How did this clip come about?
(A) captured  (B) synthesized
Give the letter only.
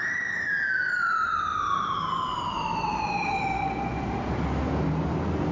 A